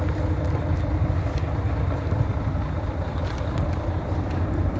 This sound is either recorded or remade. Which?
recorded